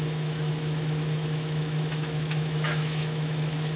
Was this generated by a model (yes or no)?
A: yes